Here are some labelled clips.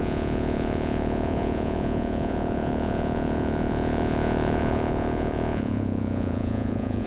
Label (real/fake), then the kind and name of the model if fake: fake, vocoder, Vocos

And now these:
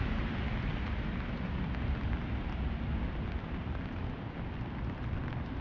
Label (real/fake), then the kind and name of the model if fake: real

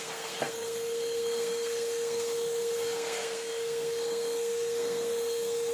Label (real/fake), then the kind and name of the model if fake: fake, codec, SNAC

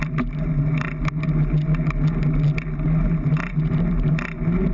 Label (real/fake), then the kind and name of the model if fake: real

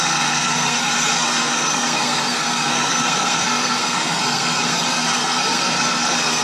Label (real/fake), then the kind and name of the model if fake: fake, codec, SNAC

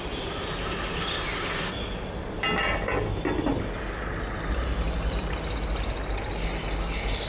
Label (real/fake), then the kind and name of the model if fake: real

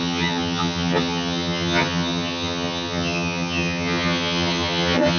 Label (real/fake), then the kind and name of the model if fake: fake, vocoder, HiFi-GAN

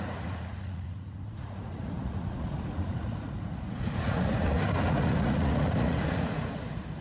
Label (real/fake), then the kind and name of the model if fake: fake, vocoder, Vocos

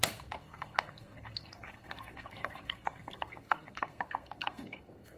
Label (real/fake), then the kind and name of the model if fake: fake, codec, SNAC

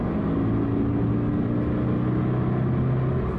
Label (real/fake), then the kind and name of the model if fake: real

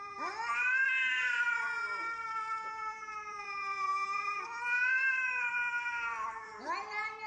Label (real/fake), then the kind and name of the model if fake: fake, vocoder, BigVGAN v2